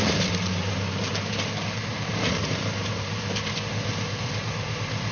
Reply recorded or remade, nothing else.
remade